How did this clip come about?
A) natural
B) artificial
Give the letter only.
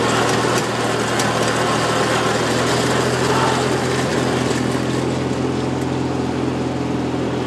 A